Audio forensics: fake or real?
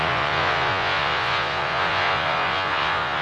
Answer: fake